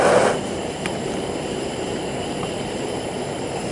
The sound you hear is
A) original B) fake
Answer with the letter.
B